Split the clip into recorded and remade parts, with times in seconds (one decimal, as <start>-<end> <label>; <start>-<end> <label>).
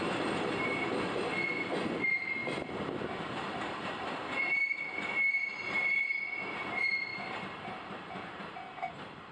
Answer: 0.0-2.4 recorded; 2.4-4.7 remade; 4.7-7.1 recorded; 7.1-9.3 remade